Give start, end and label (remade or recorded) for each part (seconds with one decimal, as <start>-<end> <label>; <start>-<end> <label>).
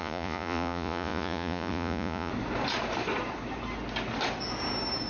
0.0-2.3 remade; 2.3-5.1 recorded